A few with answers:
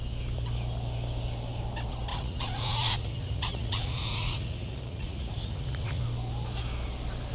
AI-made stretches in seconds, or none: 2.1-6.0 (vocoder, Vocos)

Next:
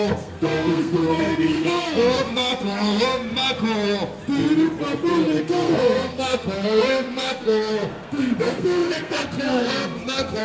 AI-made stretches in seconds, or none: 0.0-3.3 (codec, SNAC); 5.4-10.4